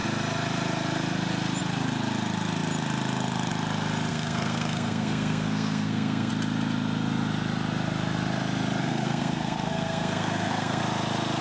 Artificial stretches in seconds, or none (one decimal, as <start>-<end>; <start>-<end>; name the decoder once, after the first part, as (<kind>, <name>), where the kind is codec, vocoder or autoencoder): 4.1-6.3 (codec, SNAC); 8.8-10.8